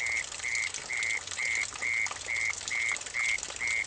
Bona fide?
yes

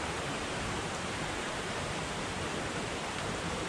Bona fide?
no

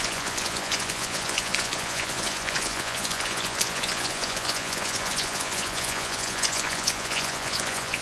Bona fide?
no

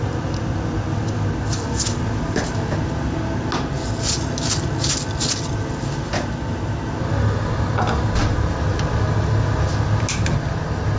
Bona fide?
yes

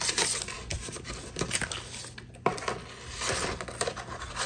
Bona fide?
yes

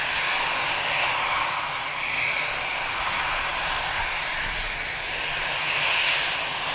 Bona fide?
yes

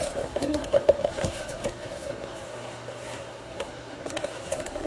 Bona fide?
no